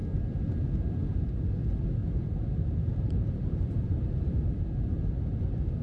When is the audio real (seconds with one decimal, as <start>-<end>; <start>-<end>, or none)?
0.0-2.0; 4.6-5.8